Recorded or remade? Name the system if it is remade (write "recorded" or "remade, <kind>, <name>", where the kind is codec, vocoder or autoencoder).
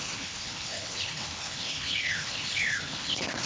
remade, codec, HILCodec